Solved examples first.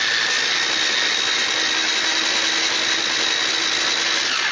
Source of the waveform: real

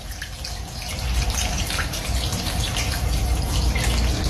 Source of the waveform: real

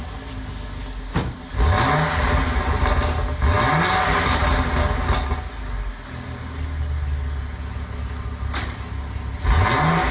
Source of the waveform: real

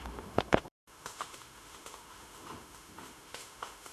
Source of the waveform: fake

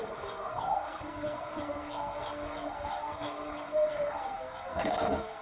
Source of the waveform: fake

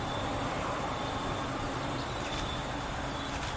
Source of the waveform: real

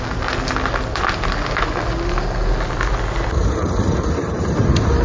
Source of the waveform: real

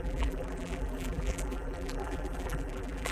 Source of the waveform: fake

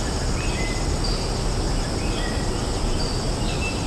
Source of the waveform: real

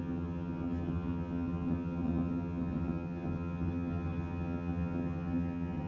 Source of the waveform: fake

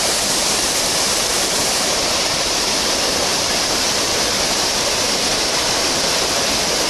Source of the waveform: real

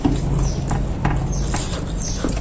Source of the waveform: real